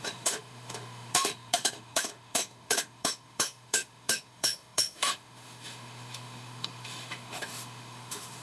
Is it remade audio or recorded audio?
remade